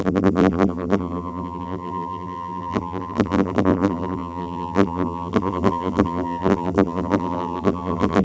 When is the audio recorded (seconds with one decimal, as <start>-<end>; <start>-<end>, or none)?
none